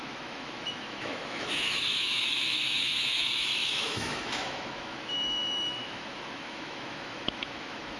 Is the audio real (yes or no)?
no